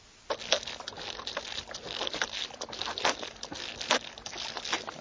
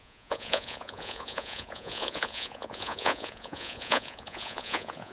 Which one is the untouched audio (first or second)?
first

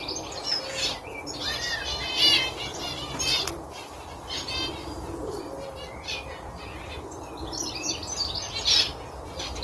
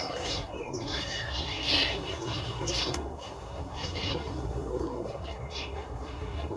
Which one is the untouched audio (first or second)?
first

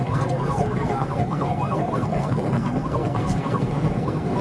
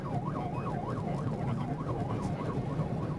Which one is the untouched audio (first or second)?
second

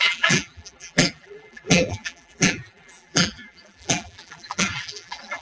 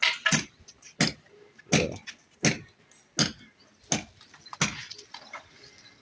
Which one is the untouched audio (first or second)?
second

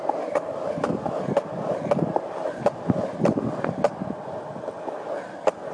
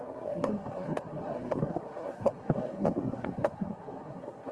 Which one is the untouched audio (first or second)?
first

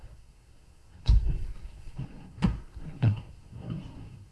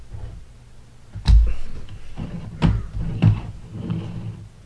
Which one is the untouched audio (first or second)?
second